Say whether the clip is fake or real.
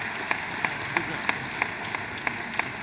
real